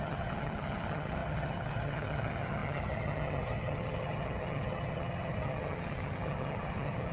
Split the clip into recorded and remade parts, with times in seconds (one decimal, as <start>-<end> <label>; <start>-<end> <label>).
0.0-7.1 remade